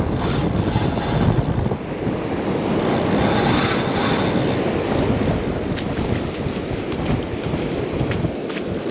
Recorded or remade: recorded